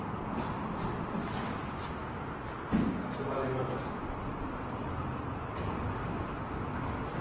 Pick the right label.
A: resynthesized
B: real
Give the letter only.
B